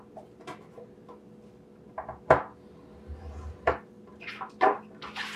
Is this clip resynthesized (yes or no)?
no